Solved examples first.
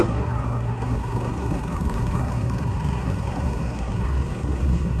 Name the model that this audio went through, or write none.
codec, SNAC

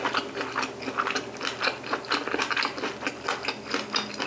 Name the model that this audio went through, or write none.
none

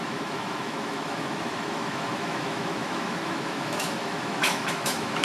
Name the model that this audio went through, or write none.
autoencoder, DAC-VAE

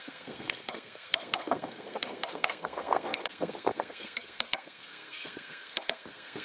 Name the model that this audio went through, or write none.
codec, SNAC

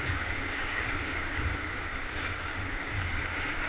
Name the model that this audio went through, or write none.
codec, DAC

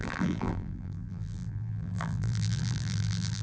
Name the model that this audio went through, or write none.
vocoder, BigVGAN v2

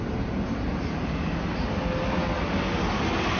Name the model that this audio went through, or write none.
none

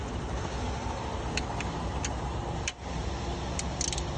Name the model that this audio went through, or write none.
none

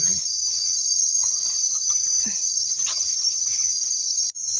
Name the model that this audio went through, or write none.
vocoder, HiFi-GAN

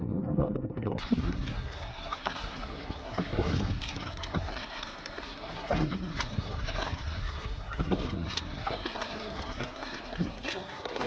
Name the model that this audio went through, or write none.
codec, SNAC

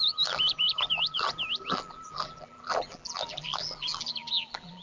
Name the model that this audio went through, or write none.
vocoder, BigVGAN v2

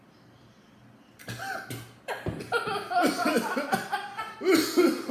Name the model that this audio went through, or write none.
none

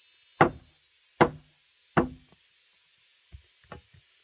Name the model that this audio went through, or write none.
none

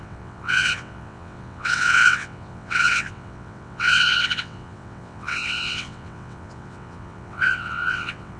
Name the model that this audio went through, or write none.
vocoder, WaveNeXt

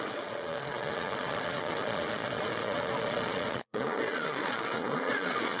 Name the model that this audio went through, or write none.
vocoder, Vocos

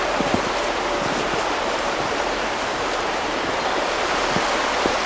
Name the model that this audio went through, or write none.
vocoder, BigVGAN v2